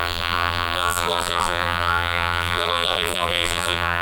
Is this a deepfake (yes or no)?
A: yes